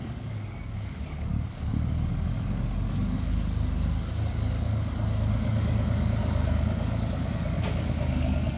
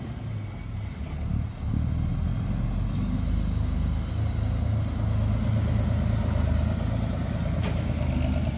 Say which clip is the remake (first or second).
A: first